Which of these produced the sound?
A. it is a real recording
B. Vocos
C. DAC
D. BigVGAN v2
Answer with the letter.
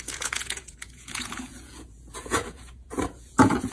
B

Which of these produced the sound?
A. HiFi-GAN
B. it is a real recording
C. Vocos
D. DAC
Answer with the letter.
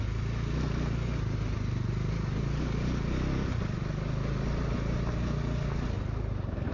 B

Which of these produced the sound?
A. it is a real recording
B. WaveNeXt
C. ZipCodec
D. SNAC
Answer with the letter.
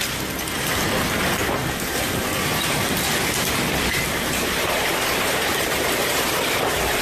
A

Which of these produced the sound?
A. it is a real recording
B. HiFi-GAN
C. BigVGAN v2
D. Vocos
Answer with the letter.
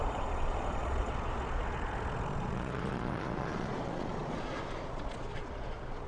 D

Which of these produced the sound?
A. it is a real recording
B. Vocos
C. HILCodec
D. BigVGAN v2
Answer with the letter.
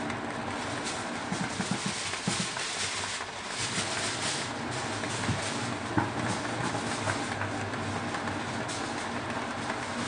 A